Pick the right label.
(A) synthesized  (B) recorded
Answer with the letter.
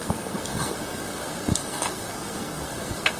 A